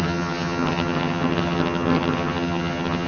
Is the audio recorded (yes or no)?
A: no